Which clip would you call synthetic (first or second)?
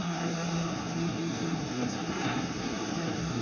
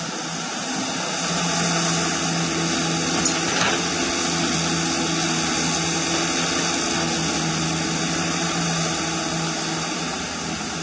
first